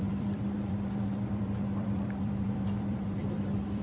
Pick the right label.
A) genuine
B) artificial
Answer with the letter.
B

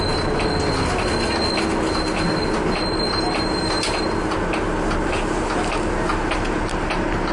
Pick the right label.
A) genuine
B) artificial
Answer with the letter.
A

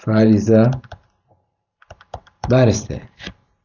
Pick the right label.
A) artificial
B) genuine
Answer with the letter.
A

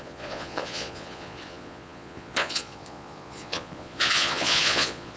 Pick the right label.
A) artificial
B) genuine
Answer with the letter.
A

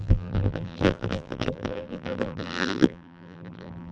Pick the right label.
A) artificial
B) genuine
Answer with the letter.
A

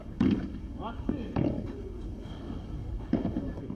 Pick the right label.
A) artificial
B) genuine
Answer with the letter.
A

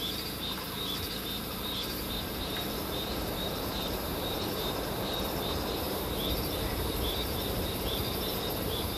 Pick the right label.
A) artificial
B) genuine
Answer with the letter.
A